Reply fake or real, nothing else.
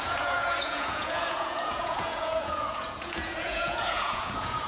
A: fake